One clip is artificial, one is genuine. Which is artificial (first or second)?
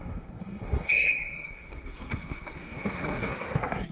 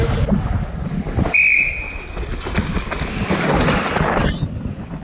first